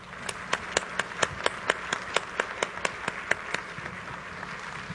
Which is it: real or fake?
real